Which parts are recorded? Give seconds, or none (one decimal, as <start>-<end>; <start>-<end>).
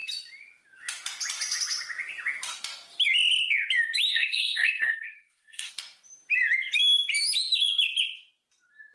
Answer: 0.0-4.1; 5.7-8.9